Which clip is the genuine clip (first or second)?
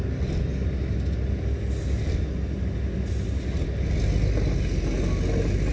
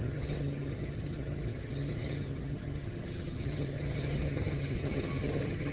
first